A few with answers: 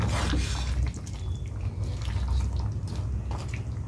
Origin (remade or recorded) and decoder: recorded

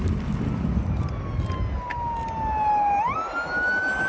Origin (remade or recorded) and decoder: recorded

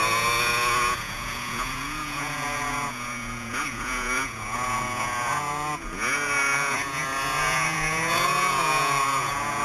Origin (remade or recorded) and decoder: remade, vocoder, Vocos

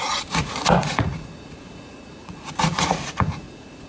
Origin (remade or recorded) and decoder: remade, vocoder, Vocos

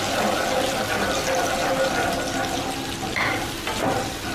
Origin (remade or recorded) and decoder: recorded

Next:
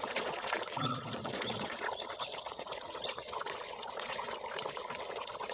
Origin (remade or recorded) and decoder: remade, vocoder, Vocos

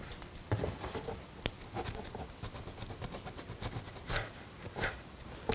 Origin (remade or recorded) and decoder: recorded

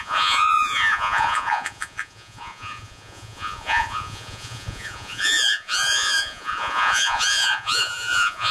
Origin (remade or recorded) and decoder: remade, vocoder, Vocos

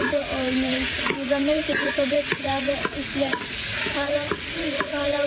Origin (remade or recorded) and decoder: remade, vocoder, Vocos